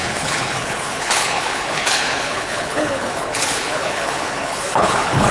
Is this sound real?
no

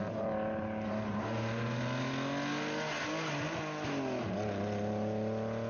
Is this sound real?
yes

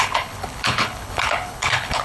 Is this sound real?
no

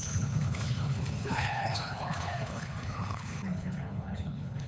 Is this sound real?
no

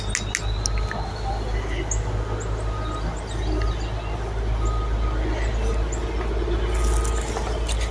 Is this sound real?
yes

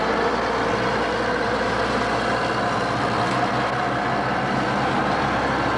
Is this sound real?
yes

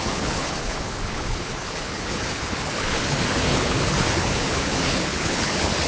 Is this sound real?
no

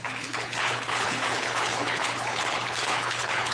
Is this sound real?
no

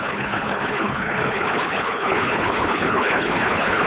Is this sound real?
no